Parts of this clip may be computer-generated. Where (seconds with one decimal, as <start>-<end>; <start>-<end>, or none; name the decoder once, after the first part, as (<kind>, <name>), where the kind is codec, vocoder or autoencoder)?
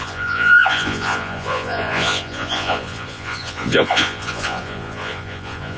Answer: 0.0-5.8 (vocoder, Vocos)